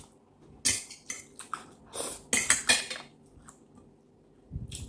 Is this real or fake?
real